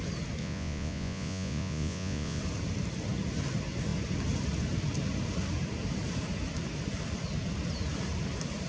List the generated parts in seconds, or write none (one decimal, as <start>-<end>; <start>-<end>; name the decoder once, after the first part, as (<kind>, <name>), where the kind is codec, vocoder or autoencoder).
0.4-2.4 (vocoder, Vocos)